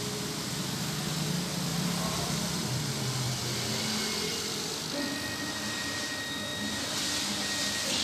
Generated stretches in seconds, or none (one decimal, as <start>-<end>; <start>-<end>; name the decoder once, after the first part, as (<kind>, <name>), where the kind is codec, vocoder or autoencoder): 1.7-3.7 (vocoder, BigVGAN v2); 6.5-7.1